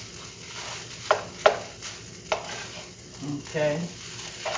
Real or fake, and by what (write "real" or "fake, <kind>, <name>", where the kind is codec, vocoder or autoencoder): real